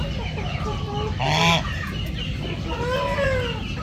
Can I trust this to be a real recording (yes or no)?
yes